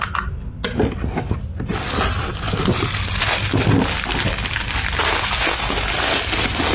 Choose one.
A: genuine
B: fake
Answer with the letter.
A